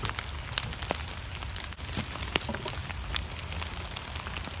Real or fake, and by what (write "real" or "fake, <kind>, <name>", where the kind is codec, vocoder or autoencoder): real